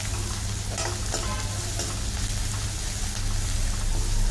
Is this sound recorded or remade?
recorded